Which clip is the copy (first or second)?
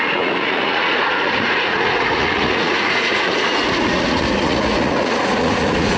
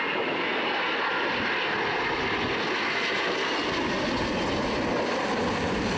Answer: first